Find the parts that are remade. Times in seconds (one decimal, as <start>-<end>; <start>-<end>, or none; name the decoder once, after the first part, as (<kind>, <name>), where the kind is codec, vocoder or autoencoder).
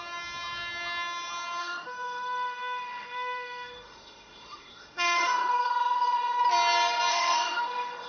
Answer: 1.6-6.4 (autoencoder, DAC-VAE); 7.1-8.1